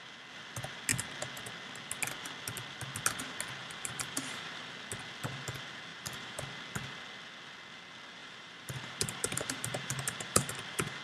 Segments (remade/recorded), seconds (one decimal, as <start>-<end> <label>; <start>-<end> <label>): 0.0-3.6 recorded; 3.6-4.7 remade; 4.7-5.9 recorded; 5.9-6.4 remade; 6.4-8.2 recorded; 8.2-11.0 remade